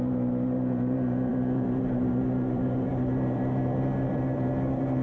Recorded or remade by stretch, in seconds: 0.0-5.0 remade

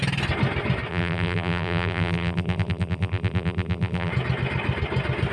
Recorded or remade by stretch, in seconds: 0.0-0.9 recorded; 0.9-4.1 remade; 4.1-5.3 recorded

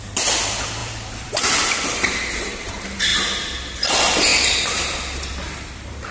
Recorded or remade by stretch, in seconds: 0.0-0.8 recorded; 0.8-1.4 remade; 1.4-6.1 recorded

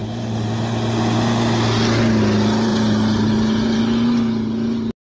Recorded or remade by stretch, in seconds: 0.0-2.7 recorded; 2.7-3.8 remade; 3.8-5.1 recorded

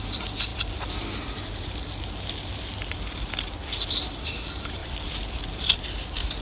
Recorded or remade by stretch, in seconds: 0.0-4.8 recorded; 4.8-5.8 remade; 5.8-6.4 recorded

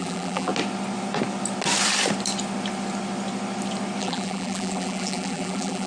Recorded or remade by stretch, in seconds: 0.0-0.5 remade; 0.5-4.0 recorded; 4.0-5.9 remade

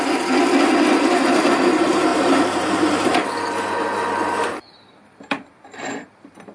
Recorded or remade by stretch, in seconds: 0.0-2.1 recorded; 2.1-4.4 remade; 4.4-6.5 recorded